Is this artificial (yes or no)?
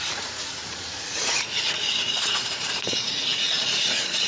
yes